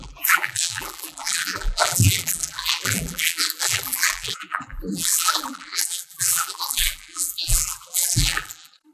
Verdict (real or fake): fake